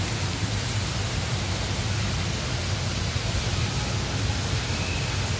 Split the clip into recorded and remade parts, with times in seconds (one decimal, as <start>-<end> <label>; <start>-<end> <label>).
0.0-5.4 recorded